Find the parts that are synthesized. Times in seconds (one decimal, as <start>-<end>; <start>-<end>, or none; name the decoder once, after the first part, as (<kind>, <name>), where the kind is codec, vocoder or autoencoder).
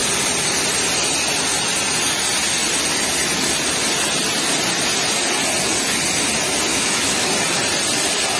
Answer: 6.7-7.3 (autoencoder, DAC-VAE)